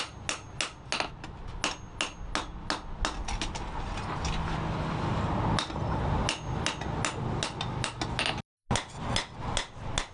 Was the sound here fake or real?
real